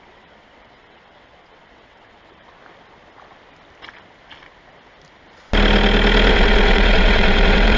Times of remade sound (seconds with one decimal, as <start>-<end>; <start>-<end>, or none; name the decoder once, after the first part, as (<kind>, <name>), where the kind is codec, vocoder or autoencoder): 0.0-2.6 (vocoder, WaveNeXt); 6.3-7.8